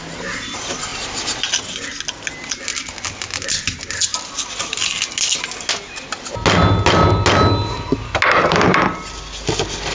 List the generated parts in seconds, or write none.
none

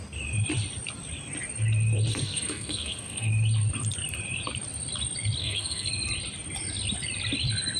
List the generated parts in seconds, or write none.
2.1-3.3 (codec, SNAC); 5.4-5.9

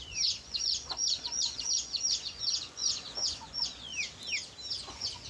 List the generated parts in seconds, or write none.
0.0-3.9 (vocoder, Vocos); 4.8-5.3

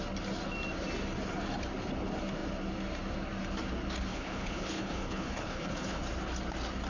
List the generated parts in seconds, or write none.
4.1-6.0 (codec, HILCodec)